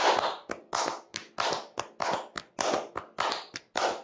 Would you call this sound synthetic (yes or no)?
no